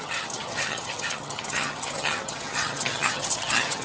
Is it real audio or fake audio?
fake